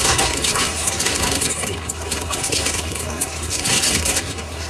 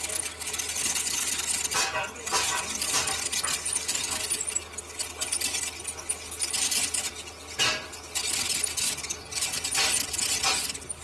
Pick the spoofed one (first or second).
first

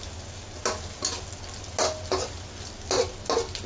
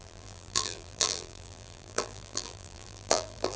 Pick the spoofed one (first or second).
second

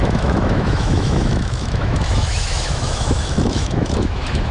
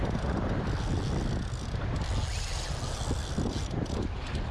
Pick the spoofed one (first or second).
first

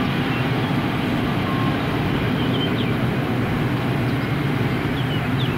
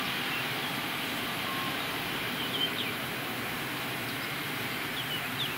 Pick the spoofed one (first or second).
second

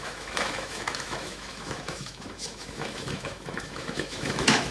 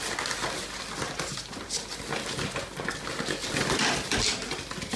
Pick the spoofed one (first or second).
first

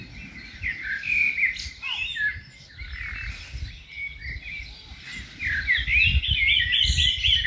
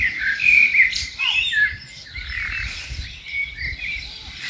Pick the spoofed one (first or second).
second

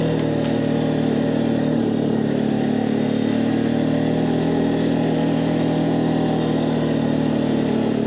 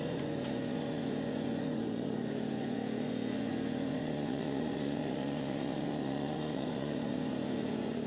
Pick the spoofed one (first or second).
second